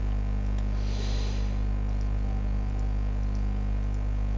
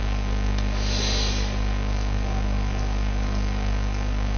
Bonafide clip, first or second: first